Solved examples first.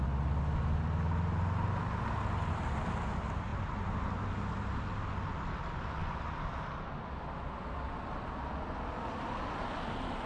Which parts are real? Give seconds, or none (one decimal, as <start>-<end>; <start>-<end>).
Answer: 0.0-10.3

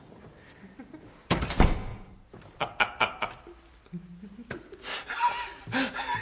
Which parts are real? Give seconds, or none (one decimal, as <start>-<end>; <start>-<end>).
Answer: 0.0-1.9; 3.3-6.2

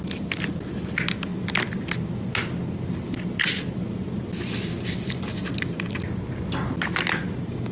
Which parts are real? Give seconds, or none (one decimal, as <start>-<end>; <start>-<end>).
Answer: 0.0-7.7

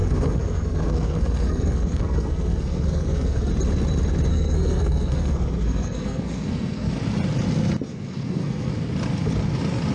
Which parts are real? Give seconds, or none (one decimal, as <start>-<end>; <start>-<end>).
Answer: 3.5-4.3; 6.9-7.9; 8.7-9.9